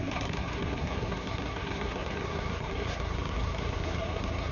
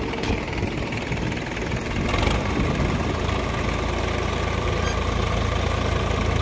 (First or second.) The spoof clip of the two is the first